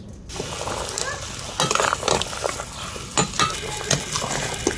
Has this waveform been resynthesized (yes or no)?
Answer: no